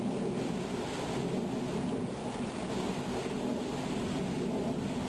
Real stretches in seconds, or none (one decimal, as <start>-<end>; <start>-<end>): 0.0-5.1